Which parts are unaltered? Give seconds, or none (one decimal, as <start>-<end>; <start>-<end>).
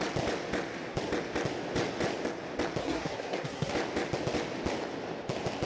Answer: 0.0-2.8; 3.7-5.7